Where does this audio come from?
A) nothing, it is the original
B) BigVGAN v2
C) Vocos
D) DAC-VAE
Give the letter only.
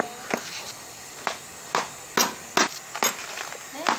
A